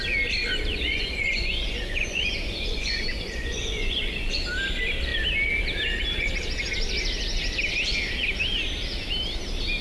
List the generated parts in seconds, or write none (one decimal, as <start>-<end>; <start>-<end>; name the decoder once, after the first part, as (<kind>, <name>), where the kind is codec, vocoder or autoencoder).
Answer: 0.7-4.4 (vocoder, Vocos)